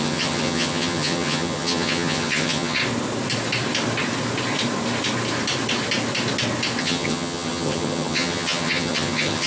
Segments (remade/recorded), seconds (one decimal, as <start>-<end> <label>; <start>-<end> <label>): 0.0-2.8 remade; 2.8-6.8 recorded; 6.8-9.5 remade